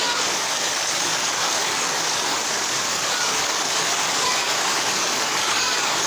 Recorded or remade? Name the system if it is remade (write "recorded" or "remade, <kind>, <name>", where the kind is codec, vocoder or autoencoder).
remade, codec, DAC